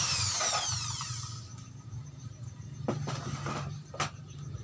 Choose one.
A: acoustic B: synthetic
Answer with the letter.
B